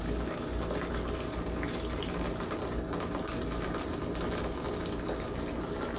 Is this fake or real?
real